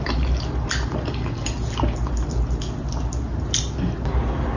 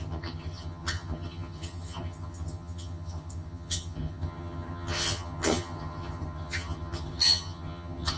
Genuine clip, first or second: first